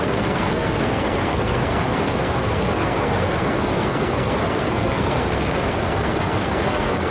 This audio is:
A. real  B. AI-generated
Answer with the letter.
B